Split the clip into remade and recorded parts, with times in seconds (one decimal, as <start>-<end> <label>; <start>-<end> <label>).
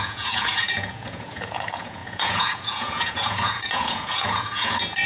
0.0-5.1 remade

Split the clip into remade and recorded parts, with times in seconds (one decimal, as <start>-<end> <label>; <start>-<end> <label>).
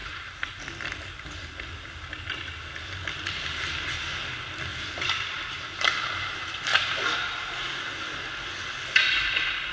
0.0-9.7 recorded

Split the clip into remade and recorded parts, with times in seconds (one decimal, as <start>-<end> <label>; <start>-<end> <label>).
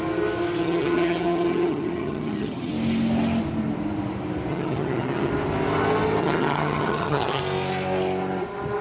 0.0-0.6 recorded; 0.6-2.7 remade; 2.7-4.5 recorded; 4.5-5.3 remade; 5.3-6.2 recorded; 6.2-7.4 remade; 7.4-8.8 recorded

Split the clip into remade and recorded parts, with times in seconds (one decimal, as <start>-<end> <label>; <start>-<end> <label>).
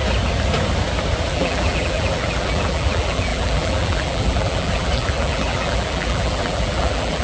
0.0-1.3 recorded; 1.3-7.2 remade